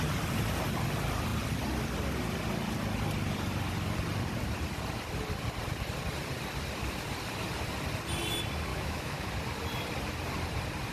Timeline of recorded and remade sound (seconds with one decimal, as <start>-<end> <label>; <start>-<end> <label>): 0.0-8.7 recorded; 8.7-9.3 remade; 9.3-10.9 recorded